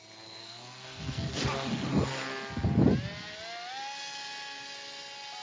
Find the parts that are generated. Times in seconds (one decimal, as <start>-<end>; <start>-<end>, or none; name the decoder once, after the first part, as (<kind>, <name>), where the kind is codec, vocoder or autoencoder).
0.4-1.3 (codec, SNAC)